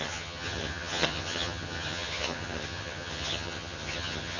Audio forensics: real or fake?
fake